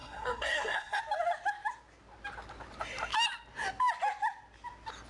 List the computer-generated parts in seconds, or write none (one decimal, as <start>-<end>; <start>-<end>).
0.0-1.0